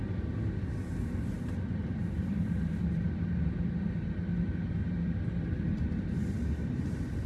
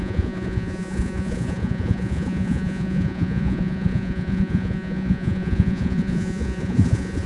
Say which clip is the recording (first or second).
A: first